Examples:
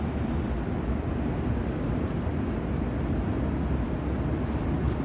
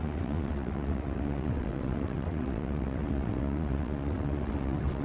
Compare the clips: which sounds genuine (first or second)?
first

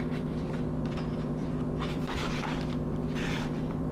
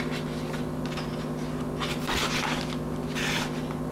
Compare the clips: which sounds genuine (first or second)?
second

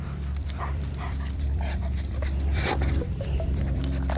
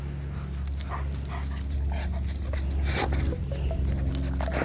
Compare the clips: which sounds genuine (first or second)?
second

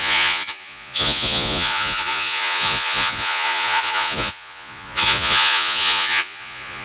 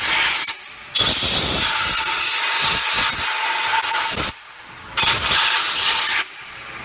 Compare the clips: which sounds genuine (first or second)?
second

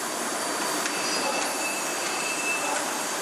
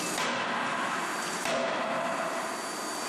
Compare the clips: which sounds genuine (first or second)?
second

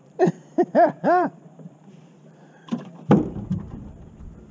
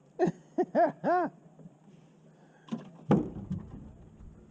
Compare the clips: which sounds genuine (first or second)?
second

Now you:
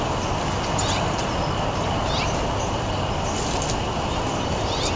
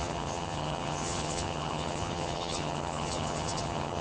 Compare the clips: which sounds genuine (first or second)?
first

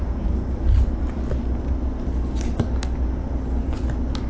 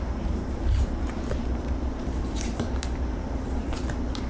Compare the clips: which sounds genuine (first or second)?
first